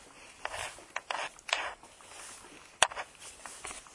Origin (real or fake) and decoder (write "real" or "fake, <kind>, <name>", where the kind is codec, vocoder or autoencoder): real